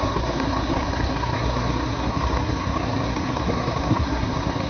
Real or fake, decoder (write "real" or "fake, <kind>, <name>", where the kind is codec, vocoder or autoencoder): fake, codec, SNAC